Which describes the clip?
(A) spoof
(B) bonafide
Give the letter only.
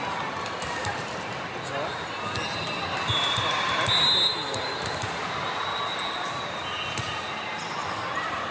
B